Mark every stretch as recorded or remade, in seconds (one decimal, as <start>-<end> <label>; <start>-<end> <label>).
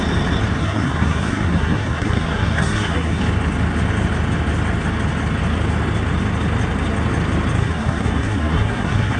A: 0.0-0.6 recorded; 0.6-3.2 remade; 3.2-7.6 recorded; 7.6-9.2 remade